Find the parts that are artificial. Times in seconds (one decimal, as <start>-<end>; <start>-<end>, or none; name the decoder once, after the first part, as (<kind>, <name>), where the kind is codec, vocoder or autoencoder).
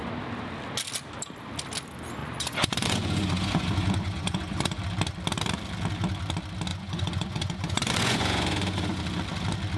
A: 2.2-4.8 (vocoder, Vocos); 6.7-9.0